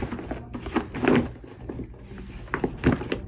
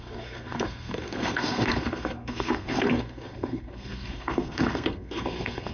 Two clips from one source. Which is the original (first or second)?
first